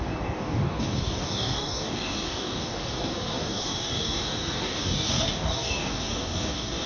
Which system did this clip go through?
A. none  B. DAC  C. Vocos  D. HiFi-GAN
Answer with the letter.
B